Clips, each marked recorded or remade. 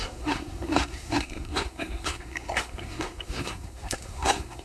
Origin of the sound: remade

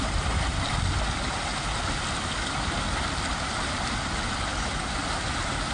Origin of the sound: recorded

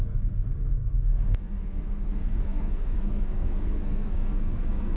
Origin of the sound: remade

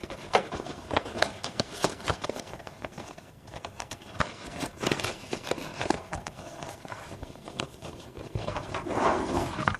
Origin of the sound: remade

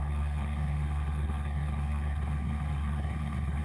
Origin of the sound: remade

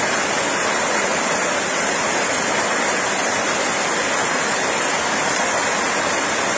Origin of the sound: recorded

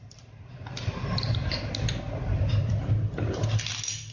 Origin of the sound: recorded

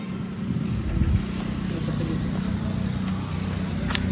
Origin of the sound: recorded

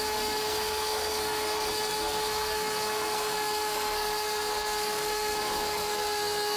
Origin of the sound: remade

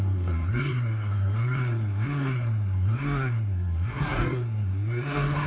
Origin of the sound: remade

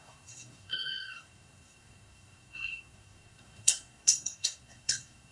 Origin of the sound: remade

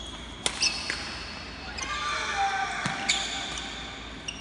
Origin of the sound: recorded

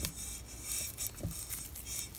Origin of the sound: recorded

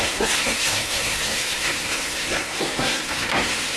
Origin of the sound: remade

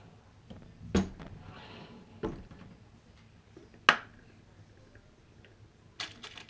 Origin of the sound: recorded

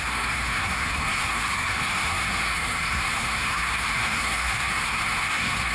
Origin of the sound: remade